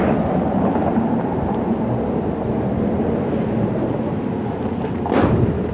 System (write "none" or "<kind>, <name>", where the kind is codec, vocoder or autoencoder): none